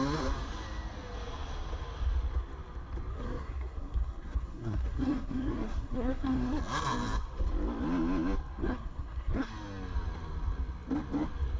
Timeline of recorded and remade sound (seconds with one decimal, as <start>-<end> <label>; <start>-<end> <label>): 0.0-3.1 recorded; 3.1-6.6 remade; 6.6-8.6 recorded; 8.6-9.5 remade; 9.5-11.6 recorded